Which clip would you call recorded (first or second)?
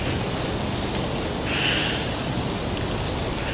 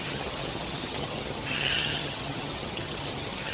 first